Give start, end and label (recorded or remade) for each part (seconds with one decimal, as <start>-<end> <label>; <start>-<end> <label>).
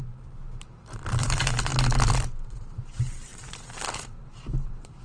0.0-1.7 remade; 1.7-2.7 recorded; 2.7-5.0 remade